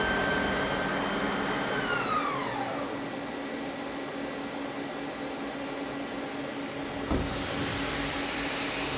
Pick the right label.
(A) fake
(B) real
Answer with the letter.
B